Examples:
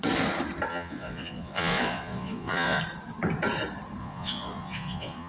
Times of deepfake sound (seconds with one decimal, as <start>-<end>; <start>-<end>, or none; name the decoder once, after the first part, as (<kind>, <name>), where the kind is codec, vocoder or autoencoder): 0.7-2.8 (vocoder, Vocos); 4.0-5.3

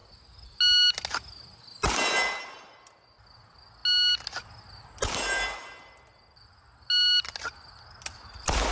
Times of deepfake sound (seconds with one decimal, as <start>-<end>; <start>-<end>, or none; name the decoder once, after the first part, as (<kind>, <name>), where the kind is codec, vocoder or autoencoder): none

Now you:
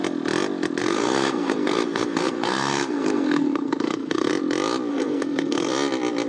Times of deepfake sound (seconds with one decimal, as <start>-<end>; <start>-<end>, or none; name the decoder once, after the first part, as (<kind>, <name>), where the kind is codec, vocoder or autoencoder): 0.8-4.3 (codec, SNAC); 4.9-5.7